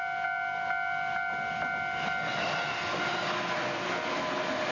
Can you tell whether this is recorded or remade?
recorded